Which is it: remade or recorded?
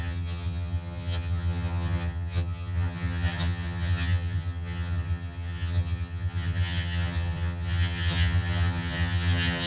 remade